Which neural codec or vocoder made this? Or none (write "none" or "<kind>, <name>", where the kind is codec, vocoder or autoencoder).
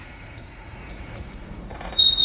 vocoder, Vocos